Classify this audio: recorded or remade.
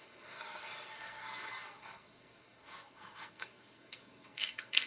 remade